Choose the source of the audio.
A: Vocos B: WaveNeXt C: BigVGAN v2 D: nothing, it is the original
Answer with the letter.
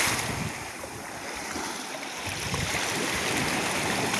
C